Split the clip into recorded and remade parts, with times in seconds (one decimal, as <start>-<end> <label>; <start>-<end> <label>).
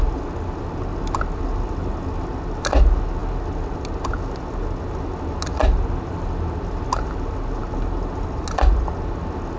0.0-9.6 recorded